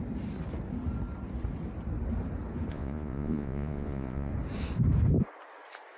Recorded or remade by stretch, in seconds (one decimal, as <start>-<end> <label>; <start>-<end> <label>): 0.0-2.7 recorded; 2.7-4.3 remade; 4.3-6.0 recorded